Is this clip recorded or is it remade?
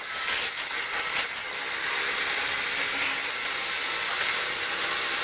remade